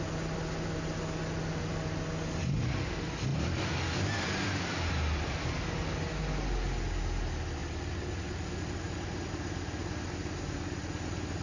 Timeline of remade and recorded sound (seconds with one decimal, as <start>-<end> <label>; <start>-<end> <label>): 0.0-3.3 recorded; 3.3-4.9 remade; 4.9-11.4 recorded

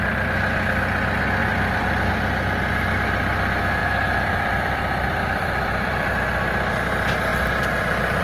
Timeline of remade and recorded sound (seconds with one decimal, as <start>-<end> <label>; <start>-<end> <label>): 0.0-1.4 recorded; 1.4-2.1 remade; 2.1-3.8 recorded; 3.8-6.1 remade; 6.1-8.2 recorded

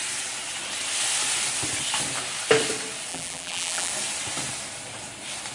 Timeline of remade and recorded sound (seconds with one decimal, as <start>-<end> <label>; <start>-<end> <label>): 0.0-3.1 recorded; 3.1-3.9 remade; 3.9-5.5 recorded

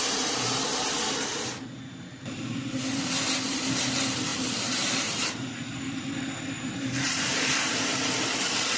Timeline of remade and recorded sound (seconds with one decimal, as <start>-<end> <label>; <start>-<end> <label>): 0.0-1.3 remade; 1.3-2.1 recorded; 2.1-8.8 remade

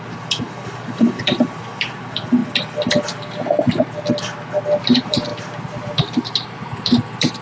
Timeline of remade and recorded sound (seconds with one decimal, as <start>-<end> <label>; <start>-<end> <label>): 0.0-2.4 remade; 2.4-4.8 recorded; 4.8-7.4 remade

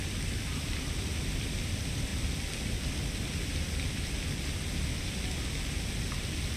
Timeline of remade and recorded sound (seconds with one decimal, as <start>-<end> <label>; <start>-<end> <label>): 0.0-1.2 recorded; 1.2-2.1 remade; 2.1-6.1 recorded; 6.1-6.6 remade